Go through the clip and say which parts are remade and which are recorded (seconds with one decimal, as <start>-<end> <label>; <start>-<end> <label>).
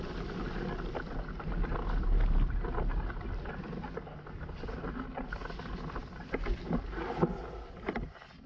0.0-8.5 recorded